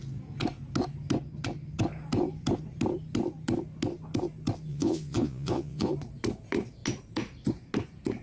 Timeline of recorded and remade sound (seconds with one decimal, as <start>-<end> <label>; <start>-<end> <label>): 0.0-4.7 recorded; 4.7-5.9 remade; 5.9-8.2 recorded